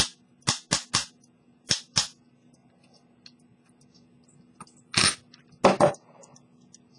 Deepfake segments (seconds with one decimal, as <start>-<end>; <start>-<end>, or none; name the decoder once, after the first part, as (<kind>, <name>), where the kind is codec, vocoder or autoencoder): none